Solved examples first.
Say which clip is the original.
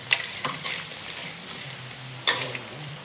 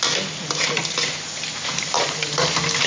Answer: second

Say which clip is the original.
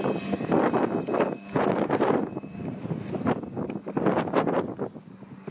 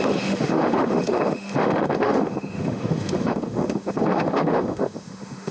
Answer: first